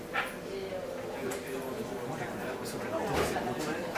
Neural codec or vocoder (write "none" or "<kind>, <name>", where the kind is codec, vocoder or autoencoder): none